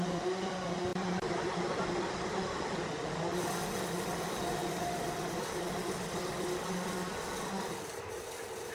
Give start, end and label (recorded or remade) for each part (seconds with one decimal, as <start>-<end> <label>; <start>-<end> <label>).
0.0-8.7 recorded